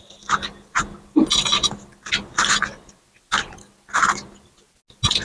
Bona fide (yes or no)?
yes